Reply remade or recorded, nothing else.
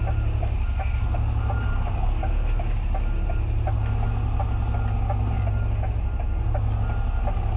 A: recorded